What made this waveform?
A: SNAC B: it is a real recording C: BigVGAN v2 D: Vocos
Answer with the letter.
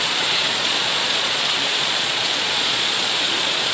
D